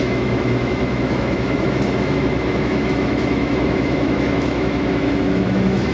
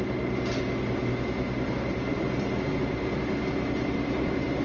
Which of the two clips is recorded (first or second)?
second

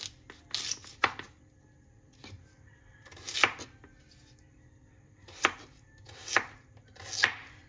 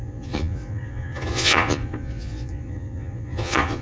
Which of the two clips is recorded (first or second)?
first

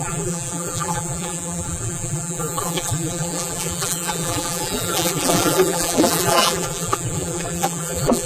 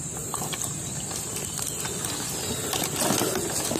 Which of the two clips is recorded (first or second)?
second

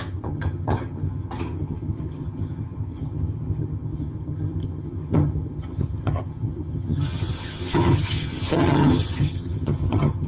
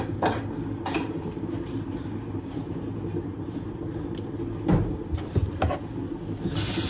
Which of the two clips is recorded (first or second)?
second